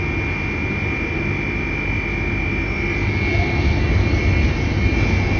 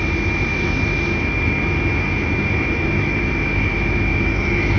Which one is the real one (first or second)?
first